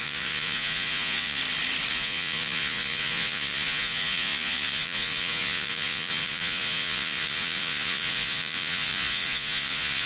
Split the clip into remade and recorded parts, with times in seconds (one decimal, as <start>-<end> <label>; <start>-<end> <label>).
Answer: 0.0-1.4 remade; 1.4-1.9 recorded; 1.9-10.1 remade